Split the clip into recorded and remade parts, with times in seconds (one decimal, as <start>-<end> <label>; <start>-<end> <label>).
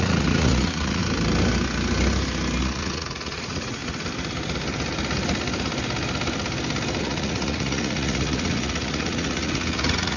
0.0-1.0 remade; 1.0-2.6 recorded; 2.6-3.8 remade; 3.8-7.0 recorded; 7.0-10.2 remade